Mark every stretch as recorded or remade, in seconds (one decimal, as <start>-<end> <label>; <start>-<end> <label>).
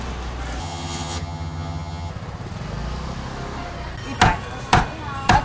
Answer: 0.0-0.6 recorded; 0.6-2.1 remade; 2.1-5.4 recorded